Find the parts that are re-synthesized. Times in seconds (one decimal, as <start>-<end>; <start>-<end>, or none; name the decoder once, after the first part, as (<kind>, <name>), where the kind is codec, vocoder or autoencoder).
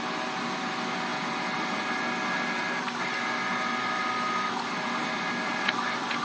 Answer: none